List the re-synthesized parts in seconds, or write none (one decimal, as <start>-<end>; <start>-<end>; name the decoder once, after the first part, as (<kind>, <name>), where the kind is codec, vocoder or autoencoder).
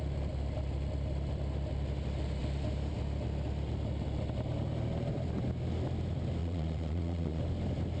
6.4-7.4 (vocoder, Vocos)